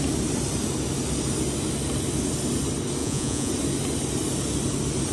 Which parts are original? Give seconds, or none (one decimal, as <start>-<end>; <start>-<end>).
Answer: 0.0-3.0; 3.5-5.1